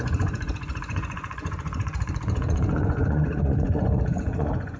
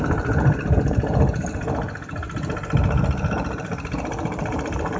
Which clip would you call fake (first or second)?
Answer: first